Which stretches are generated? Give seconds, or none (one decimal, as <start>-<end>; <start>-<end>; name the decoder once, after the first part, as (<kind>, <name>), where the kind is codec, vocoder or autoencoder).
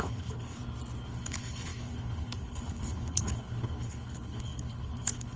0.0-0.6 (codec, HILCodec); 1.1-5.4